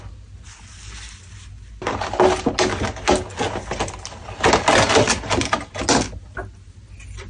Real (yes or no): yes